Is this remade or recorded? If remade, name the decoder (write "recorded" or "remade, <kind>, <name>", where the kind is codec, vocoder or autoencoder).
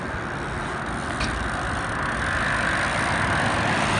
recorded